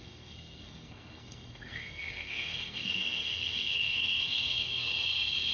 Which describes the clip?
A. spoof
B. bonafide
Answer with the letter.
A